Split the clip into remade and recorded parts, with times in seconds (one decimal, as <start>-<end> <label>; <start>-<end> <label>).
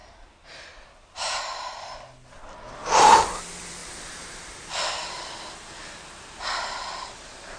0.0-3.8 recorded; 3.8-4.6 remade; 4.6-7.6 recorded